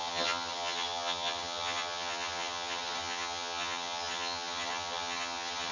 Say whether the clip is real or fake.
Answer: fake